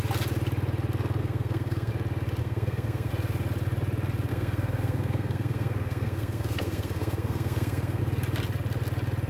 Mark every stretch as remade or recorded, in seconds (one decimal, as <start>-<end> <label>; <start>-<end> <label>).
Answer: 0.0-1.2 recorded; 1.2-1.9 remade; 1.9-2.4 recorded; 2.4-3.1 remade; 3.1-4.3 recorded; 4.3-8.0 remade; 8.0-9.3 recorded